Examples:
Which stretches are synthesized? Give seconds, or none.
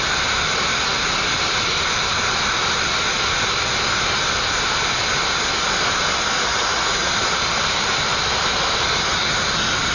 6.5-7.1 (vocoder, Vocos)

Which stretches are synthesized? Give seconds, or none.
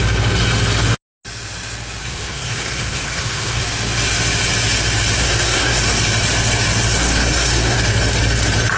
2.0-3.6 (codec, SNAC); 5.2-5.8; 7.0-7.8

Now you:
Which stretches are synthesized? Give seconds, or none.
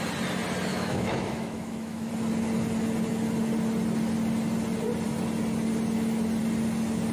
0.7-2.1 (autoencoder, DAC-VAE)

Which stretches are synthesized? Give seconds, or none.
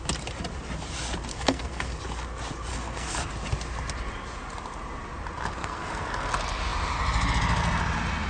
1.3-2.0 (codec, SNAC); 2.7-3.3; 5.6-6.3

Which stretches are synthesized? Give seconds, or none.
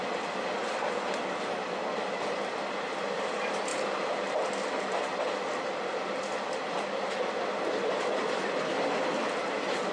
0.0-3.7 (vocoder, BigVGAN v2); 5.5-9.9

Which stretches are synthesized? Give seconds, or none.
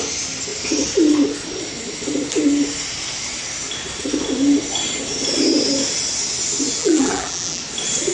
6.8-7.6 (vocoder, BigVGAN v2)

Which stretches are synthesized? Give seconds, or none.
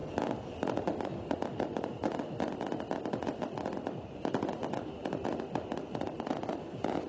none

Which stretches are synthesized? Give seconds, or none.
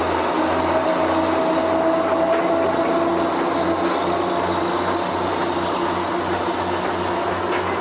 none